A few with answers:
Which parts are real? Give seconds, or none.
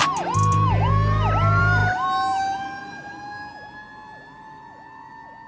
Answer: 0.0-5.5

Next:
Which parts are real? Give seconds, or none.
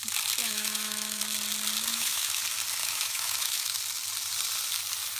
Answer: 0.0-0.4; 1.2-1.9; 2.4-2.8; 3.8-5.2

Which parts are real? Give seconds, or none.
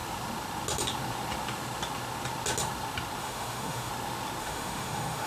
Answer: 0.0-3.2; 3.9-4.4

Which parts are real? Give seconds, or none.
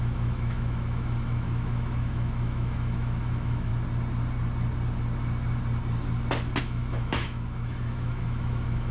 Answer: 3.7-6.6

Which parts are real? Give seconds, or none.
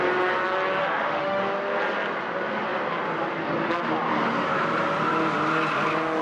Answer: 0.0-0.8; 1.4-6.2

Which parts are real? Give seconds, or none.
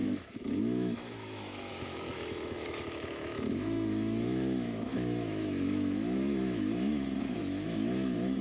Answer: none